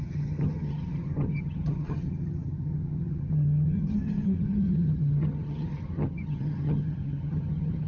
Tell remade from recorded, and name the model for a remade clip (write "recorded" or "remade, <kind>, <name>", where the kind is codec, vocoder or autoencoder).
remade, vocoder, HiFi-GAN